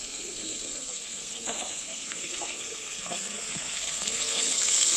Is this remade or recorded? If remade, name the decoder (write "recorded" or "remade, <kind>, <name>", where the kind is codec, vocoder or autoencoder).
remade, codec, SNAC